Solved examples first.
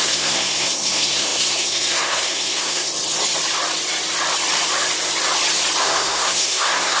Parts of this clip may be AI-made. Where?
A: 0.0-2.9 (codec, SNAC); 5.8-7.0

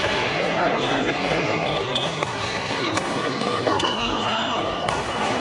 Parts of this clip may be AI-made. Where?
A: 0.0-5.4 (codec, SNAC)